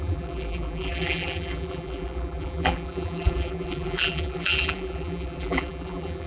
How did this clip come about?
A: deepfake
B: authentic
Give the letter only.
A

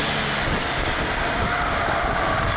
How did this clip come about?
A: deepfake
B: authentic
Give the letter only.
B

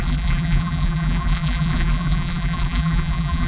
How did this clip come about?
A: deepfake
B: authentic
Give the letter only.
A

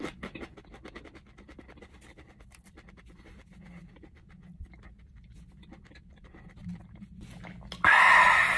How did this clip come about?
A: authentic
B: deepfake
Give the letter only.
A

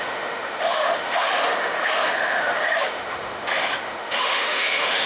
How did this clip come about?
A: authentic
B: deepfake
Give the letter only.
B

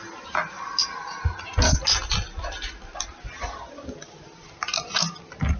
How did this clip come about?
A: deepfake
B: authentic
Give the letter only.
B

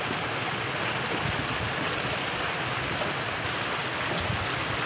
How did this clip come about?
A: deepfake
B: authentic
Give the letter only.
B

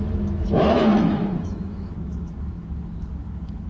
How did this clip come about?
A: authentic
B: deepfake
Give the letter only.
B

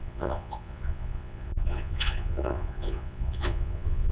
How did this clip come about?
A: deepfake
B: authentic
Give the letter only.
A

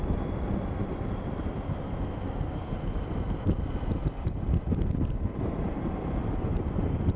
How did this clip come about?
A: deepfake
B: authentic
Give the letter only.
B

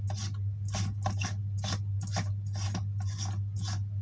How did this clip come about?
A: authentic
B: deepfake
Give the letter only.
A